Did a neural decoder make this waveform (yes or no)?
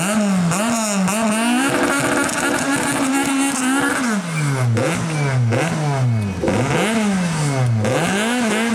no